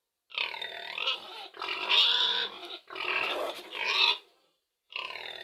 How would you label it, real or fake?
real